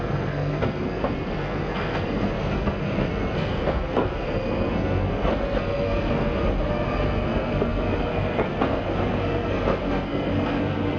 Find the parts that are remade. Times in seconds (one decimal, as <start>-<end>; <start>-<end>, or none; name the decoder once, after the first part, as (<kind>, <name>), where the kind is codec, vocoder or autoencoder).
0.0-11.0 (codec, SNAC)